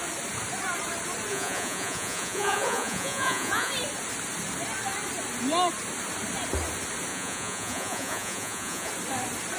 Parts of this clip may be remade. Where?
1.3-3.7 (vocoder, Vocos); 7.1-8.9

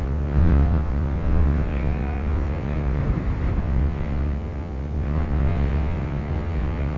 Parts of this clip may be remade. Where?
0.0-3.0 (vocoder, WaveNeXt); 3.6-7.0

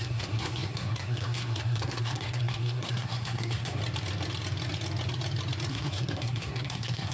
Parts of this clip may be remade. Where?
0.0-3.8 (codec, SNAC); 5.7-7.1